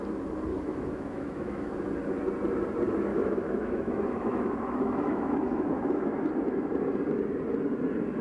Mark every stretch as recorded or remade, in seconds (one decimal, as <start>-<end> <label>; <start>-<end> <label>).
0.0-0.5 recorded; 0.5-1.7 remade; 1.7-3.1 recorded; 3.1-6.3 remade; 6.3-8.2 recorded